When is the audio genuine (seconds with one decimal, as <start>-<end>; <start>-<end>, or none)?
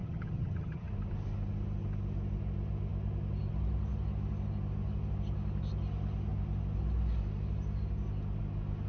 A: 0.9-8.9